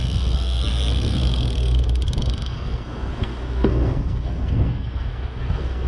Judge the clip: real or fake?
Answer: fake